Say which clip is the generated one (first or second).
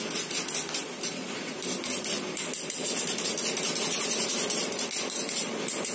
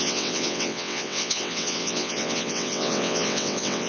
second